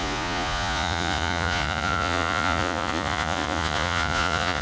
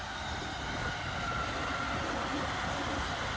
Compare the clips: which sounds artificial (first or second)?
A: first